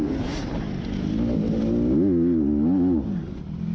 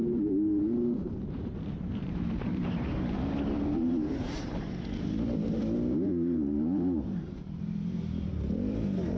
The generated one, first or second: second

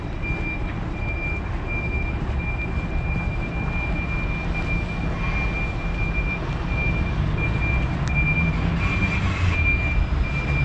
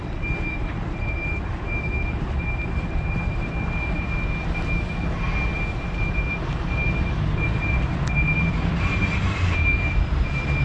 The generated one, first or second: second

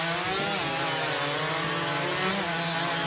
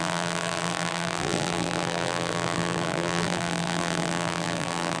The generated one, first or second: second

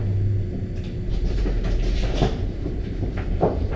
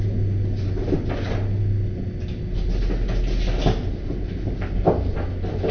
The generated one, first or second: first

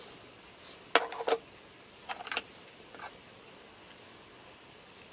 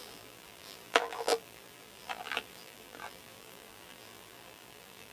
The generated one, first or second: second